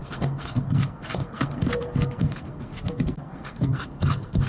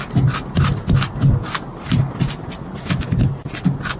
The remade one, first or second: first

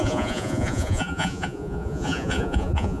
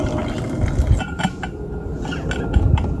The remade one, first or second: first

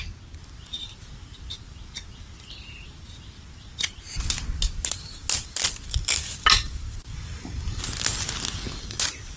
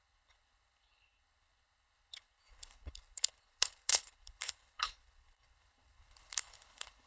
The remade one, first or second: second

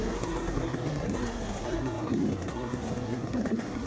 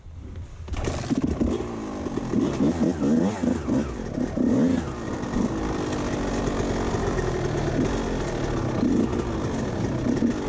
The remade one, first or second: first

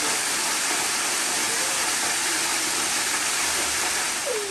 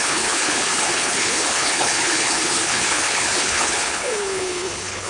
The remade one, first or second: second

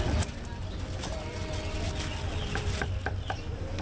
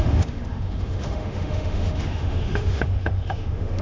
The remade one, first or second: second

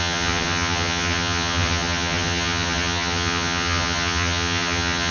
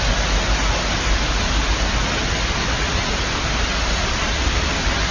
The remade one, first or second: first